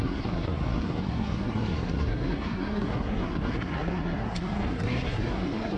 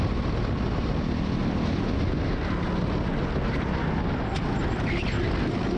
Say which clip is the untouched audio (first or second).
second